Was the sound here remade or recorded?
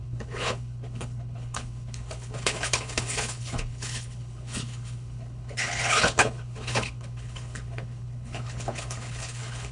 remade